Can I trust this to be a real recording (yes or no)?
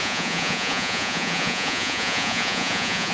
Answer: no